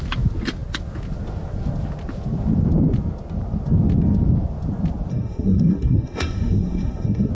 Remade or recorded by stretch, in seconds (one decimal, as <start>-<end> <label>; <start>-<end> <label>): 0.0-5.1 recorded; 5.1-7.3 remade